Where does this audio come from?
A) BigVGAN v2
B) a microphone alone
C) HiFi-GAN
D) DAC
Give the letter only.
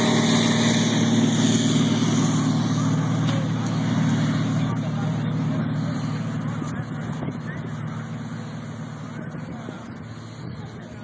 B